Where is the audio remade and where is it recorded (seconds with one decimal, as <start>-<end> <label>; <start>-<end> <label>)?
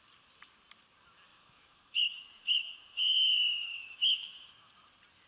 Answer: 0.0-1.3 recorded; 1.3-4.5 remade; 4.5-5.3 recorded